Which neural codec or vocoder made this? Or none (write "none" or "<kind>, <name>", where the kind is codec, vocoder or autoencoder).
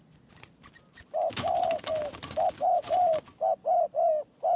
none